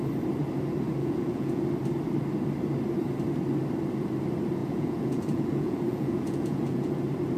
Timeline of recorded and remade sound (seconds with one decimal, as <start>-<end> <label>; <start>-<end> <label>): 0.0-1.0 recorded; 1.0-1.6 remade; 1.6-4.6 recorded; 4.6-7.0 remade; 7.0-7.4 recorded